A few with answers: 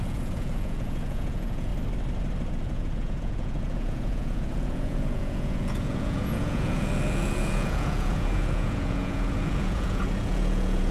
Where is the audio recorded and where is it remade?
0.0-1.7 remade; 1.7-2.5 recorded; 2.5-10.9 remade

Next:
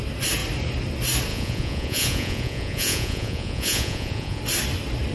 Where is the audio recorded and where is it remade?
0.0-1.3 recorded; 1.3-4.4 remade; 4.4-5.1 recorded